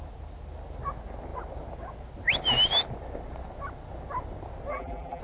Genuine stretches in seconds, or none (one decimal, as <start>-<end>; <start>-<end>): 0.0-4.7